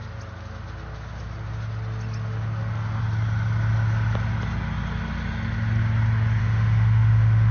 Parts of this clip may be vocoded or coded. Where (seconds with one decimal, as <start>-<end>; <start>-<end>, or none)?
6.4-7.5